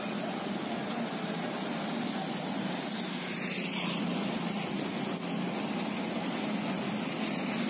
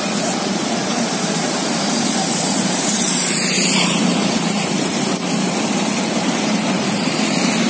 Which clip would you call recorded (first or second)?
first